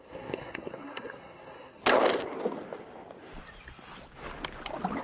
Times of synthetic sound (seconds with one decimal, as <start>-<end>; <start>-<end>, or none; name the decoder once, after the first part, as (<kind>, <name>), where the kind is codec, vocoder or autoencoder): 0.0-1.8 (codec, SNAC)